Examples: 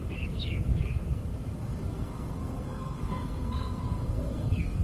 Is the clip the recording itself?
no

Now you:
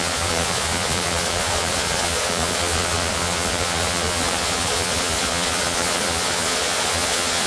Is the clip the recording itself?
no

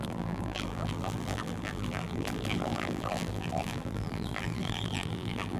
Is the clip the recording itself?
no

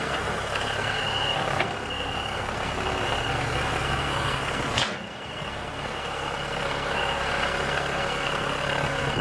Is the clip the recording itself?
no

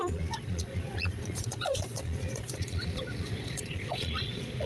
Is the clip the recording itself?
no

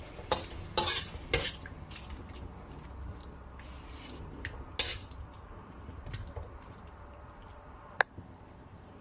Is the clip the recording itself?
yes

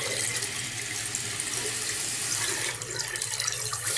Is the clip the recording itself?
no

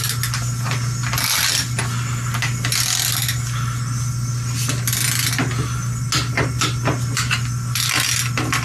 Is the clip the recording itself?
yes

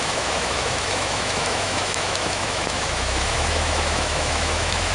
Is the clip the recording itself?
no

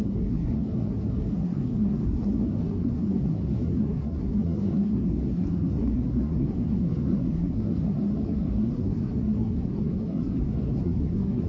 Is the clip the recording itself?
no